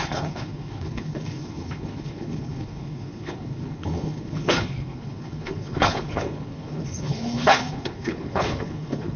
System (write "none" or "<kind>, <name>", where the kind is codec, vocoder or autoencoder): codec, HILCodec